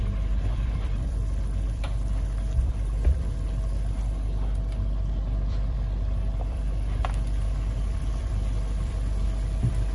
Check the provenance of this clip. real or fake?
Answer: fake